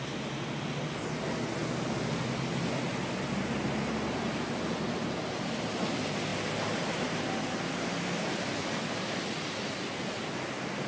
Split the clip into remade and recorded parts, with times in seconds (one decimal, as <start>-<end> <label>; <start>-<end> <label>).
0.0-6.3 recorded; 6.3-9.2 remade; 9.2-10.9 recorded